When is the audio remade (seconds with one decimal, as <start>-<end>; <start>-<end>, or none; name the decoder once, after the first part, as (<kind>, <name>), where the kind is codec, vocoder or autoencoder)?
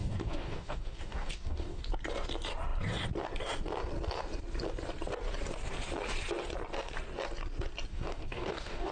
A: 0.0-1.8 (codec, DAC); 7.9-8.9